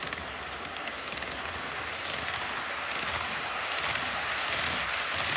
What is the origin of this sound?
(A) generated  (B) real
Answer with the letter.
B